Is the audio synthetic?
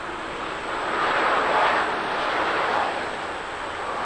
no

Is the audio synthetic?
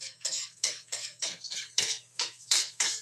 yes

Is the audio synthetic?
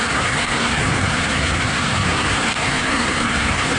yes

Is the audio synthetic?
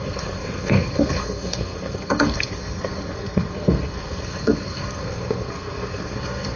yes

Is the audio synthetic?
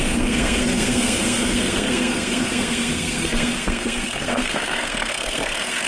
yes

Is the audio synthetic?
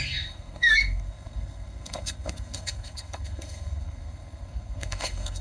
yes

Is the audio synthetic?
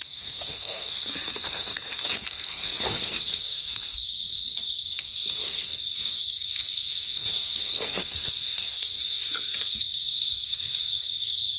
yes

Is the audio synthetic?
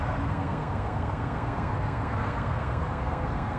yes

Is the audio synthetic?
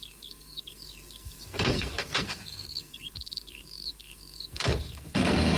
yes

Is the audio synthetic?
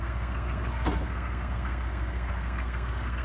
yes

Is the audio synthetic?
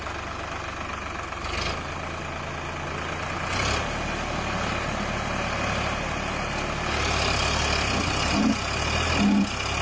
no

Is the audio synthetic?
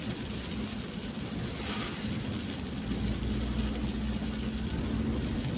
no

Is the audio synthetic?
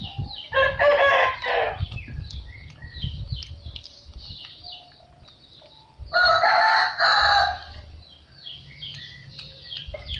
no